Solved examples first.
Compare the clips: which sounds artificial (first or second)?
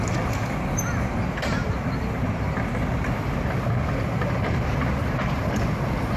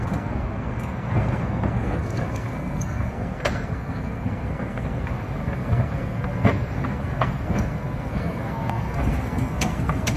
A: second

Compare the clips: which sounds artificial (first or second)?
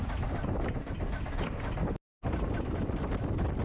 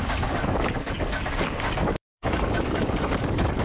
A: second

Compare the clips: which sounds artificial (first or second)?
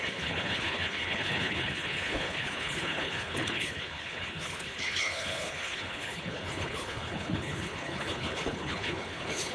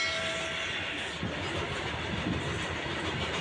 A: first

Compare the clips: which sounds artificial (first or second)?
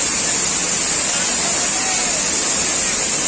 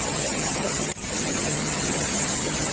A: second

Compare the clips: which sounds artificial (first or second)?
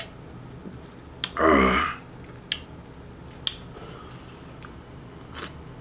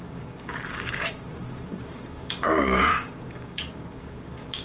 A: second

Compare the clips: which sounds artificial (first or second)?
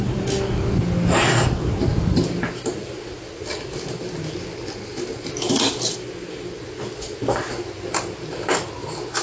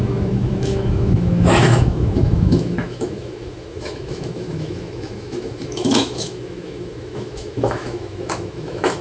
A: second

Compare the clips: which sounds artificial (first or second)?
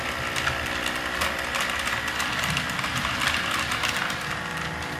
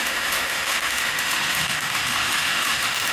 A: second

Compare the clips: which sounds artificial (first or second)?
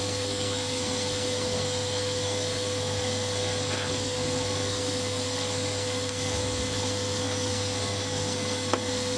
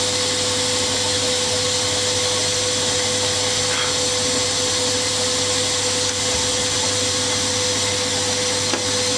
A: first